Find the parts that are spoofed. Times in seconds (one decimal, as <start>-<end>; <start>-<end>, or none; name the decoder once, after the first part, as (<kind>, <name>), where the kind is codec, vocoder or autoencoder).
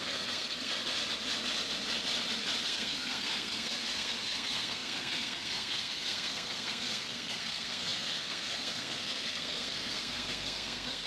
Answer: 0.0-0.7 (codec, SNAC); 2.6-11.1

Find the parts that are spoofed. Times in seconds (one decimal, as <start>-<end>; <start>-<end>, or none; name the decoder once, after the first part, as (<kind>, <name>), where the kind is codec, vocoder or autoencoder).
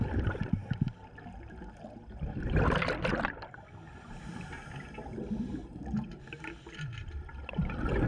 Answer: none